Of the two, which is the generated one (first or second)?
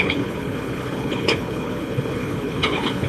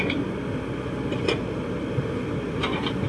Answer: first